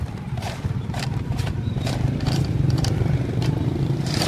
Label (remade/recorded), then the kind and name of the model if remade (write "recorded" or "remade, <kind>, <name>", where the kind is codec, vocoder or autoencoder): remade, vocoder, BigVGAN v2